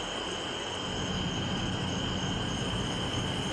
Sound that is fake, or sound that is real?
real